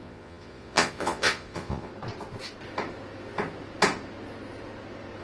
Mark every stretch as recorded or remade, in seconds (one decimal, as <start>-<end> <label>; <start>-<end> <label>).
0.0-1.9 remade; 1.9-5.2 recorded